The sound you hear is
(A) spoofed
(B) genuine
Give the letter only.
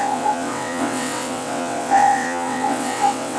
A